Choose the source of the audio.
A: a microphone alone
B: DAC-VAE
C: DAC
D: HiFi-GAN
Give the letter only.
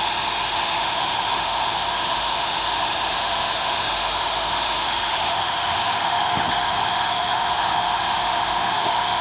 B